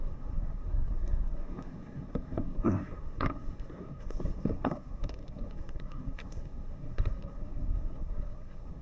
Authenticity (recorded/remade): remade